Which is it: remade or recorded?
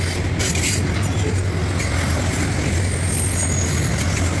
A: recorded